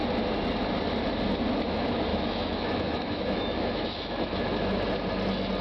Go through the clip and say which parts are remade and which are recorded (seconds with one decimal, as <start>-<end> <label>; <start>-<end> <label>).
0.0-2.1 recorded; 2.1-4.4 remade; 4.4-5.6 recorded